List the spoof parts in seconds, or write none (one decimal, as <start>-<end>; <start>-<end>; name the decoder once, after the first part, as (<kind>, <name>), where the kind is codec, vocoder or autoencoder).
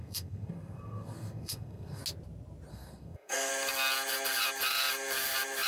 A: 0.0-2.0 (codec, SNAC); 2.7-3.5